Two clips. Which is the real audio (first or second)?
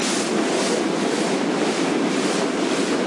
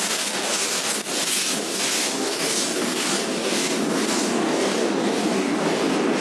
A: first